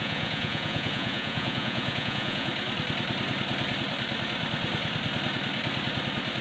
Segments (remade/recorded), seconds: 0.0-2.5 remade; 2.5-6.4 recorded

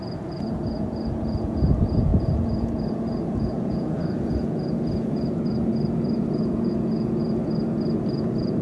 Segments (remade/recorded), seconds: 0.0-7.4 remade; 7.4-8.0 recorded; 8.0-8.6 remade

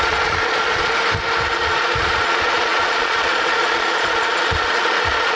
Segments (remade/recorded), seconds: 0.0-0.9 remade; 0.9-1.6 recorded; 1.6-5.4 remade

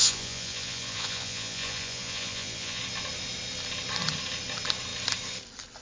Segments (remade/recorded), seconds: 0.0-2.8 remade; 2.8-5.8 recorded

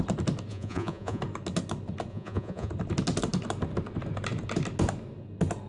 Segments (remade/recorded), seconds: 0.0-0.5 recorded; 0.5-1.2 remade; 1.2-2.1 recorded; 2.1-2.7 remade; 2.7-5.7 recorded

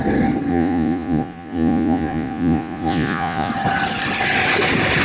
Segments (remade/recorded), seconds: 0.0-0.5 recorded; 0.5-3.5 remade; 3.5-5.0 recorded

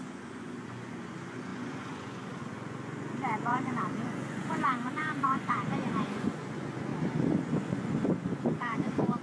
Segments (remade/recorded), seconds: 0.0-6.9 remade; 6.9-7.4 recorded; 7.4-9.2 remade